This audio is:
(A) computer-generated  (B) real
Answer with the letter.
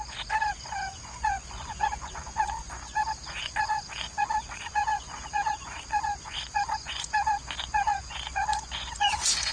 A